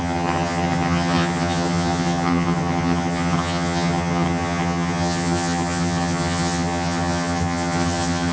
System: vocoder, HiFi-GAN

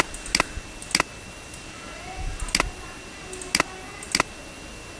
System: none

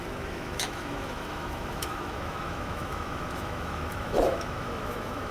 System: autoencoder, DAC-VAE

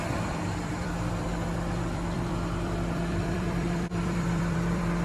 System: vocoder, BigVGAN v2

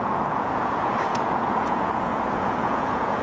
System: vocoder, Vocos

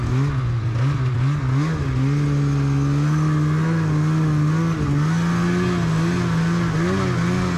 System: none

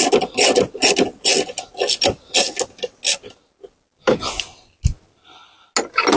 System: none